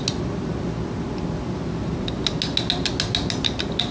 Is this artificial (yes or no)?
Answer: no